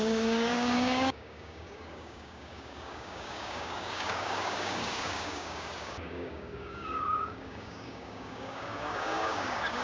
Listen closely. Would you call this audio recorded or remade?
remade